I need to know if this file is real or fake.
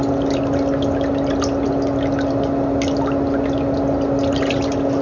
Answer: real